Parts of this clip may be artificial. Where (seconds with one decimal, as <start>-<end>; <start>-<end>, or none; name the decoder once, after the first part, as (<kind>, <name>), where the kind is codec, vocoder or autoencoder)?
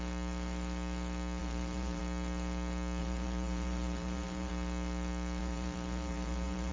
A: 1.4-2.0 (vocoder, BigVGAN v2); 3.0-4.5; 5.4-6.7